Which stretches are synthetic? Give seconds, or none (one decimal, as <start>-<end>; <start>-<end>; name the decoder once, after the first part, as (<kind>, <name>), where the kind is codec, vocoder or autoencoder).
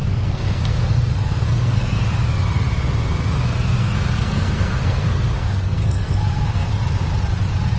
0.0-2.1 (codec, SNAC); 3.8-6.7